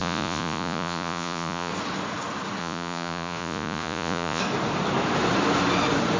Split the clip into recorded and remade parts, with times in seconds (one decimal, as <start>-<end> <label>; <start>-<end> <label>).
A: 0.0-1.7 remade; 1.7-2.6 recorded; 2.6-4.4 remade; 4.4-6.2 recorded